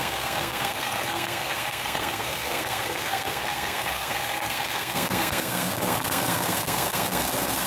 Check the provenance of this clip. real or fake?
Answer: fake